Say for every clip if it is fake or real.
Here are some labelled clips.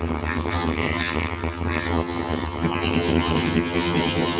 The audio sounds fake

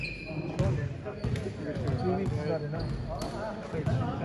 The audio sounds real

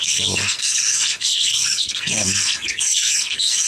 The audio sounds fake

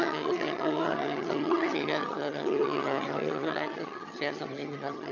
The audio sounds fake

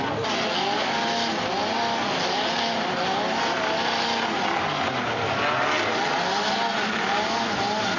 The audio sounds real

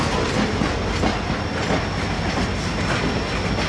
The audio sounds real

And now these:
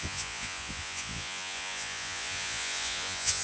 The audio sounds fake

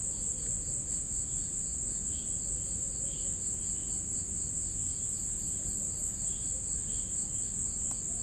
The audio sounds real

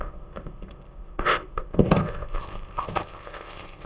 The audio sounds fake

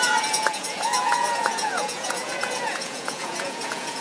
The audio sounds fake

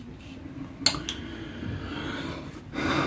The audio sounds real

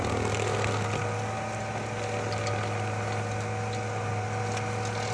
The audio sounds real